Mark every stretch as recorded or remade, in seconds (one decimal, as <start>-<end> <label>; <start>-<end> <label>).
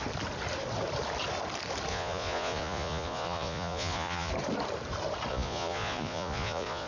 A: 0.0-1.9 recorded; 1.9-4.3 remade; 4.3-5.3 recorded; 5.3-6.9 remade